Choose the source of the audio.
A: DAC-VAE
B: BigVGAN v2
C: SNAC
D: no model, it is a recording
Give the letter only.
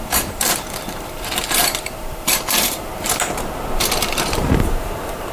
B